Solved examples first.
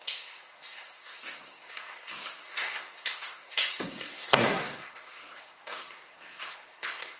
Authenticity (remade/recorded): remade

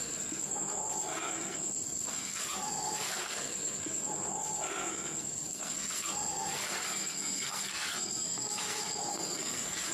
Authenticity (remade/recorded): remade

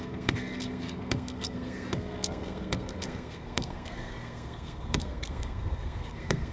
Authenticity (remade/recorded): remade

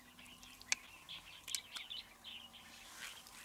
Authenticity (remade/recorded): recorded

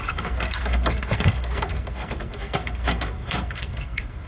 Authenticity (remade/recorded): remade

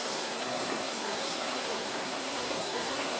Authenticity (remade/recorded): remade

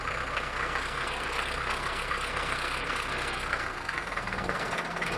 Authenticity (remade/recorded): remade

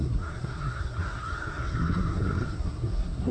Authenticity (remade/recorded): remade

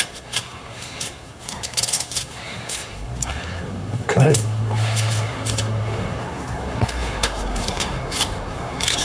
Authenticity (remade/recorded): remade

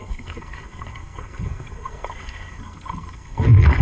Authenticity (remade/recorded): remade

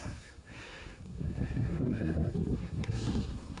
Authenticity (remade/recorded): remade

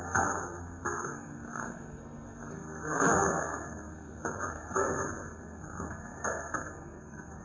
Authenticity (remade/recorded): remade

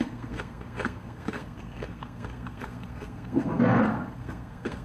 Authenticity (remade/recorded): remade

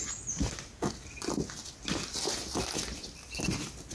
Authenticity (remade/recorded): recorded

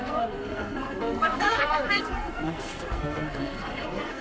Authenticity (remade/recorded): remade